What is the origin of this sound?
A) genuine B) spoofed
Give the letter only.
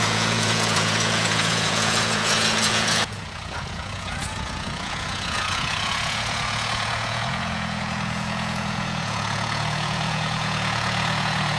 B